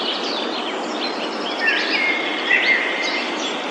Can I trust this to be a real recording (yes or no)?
yes